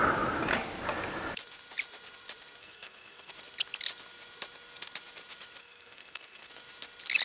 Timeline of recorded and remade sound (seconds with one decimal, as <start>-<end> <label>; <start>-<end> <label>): 0.0-2.6 recorded; 2.6-3.3 remade; 3.3-5.6 recorded; 5.6-6.5 remade; 6.5-7.2 recorded